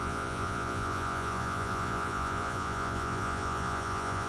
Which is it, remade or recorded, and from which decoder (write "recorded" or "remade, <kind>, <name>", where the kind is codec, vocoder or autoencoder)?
remade, vocoder, Vocos